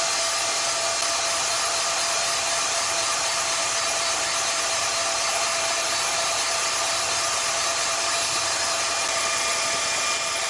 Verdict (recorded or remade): recorded